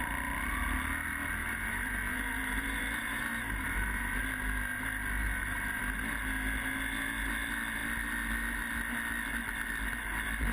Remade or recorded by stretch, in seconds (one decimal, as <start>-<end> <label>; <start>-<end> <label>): 0.0-1.4 recorded; 1.4-4.2 remade; 4.2-5.2 recorded; 5.2-5.8 remade; 5.8-10.5 recorded